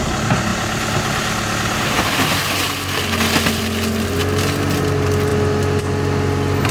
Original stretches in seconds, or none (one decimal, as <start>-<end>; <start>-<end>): 0.0-6.7